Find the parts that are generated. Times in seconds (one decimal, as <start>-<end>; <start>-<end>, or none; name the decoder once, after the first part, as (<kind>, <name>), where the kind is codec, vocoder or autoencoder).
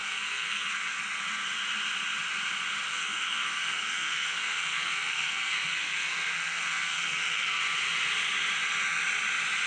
0.0-1.0 (codec, SNAC); 2.9-7.6